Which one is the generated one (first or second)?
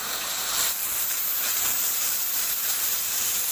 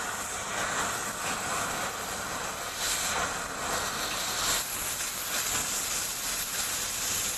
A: first